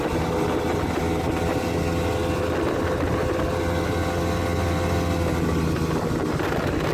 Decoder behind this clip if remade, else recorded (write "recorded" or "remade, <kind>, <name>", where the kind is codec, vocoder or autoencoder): recorded